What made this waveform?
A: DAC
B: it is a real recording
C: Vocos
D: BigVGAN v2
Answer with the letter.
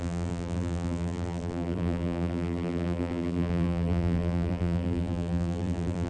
D